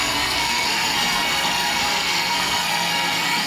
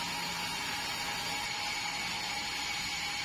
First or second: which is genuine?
second